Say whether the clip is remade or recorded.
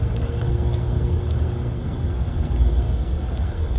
remade